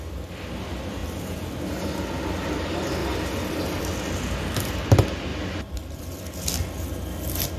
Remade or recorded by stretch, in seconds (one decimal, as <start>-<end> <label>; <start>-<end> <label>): 0.0-1.0 recorded; 1.0-1.5 remade; 1.5-3.0 recorded; 3.0-3.9 remade; 3.9-5.3 recorded; 5.3-6.5 remade; 6.5-7.6 recorded